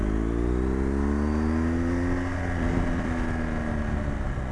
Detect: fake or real real